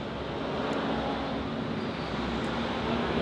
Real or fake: real